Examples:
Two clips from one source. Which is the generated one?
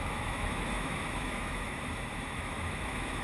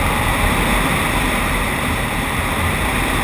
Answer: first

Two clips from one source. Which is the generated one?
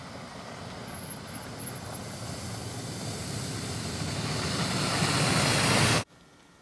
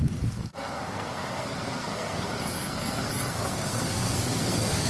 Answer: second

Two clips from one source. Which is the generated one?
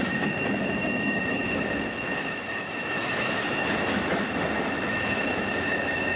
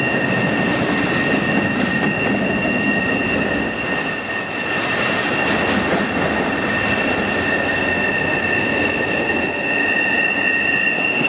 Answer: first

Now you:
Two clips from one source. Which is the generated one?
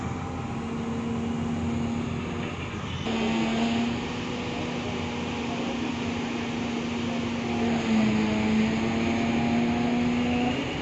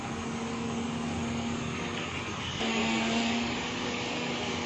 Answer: second